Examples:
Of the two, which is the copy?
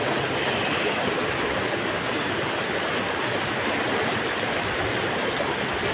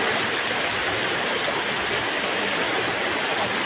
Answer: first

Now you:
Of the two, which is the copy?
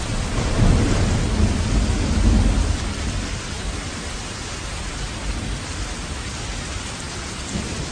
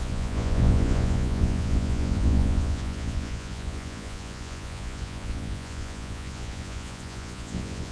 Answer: second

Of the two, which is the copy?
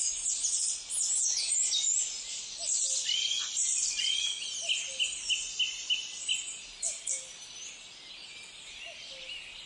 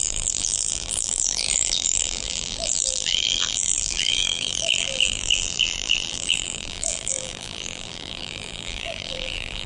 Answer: second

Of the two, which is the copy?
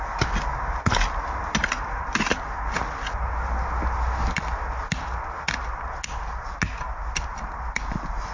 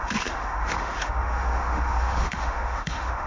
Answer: second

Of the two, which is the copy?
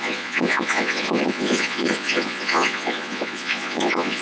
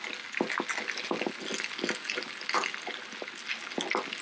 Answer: first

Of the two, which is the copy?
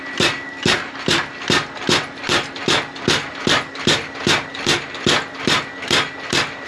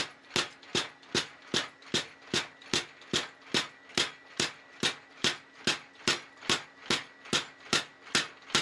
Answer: first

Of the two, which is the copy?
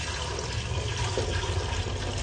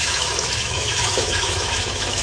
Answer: second